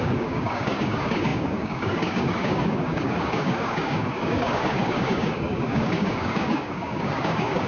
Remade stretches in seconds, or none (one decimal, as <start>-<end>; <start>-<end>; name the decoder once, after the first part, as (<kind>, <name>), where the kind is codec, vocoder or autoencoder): 0.0-7.7 (codec, DAC)